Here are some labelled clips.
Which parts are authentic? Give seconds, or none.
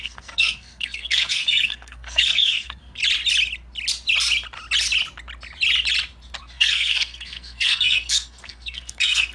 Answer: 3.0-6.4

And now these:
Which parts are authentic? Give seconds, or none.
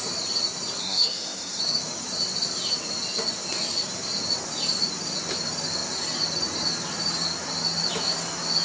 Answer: 0.0-0.8; 1.6-8.6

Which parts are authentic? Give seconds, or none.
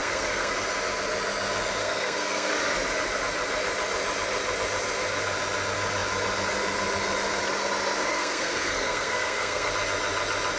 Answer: 0.5-1.8; 2.5-8.1; 9.7-10.6